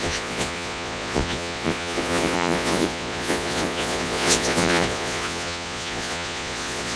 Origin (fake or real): fake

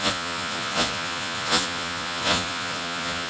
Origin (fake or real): fake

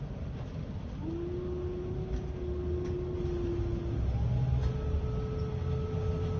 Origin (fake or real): real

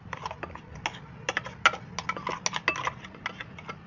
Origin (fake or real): real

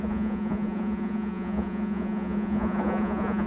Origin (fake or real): fake